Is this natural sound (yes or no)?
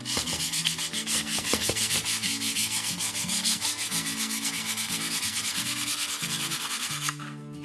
no